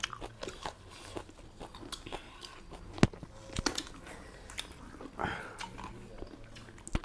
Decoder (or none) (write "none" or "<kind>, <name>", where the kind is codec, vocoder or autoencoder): none